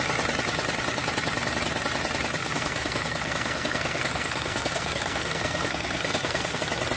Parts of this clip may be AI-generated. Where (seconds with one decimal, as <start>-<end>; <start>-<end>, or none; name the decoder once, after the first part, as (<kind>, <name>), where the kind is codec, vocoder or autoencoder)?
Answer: 2.4-6.6 (codec, SNAC)